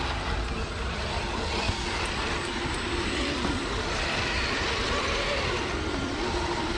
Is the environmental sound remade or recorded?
recorded